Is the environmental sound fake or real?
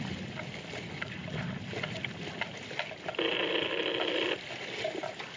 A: real